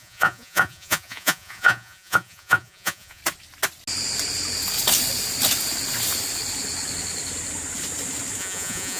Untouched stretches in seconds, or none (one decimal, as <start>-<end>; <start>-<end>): 3.2-8.4